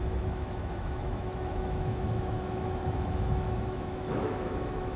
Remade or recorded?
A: remade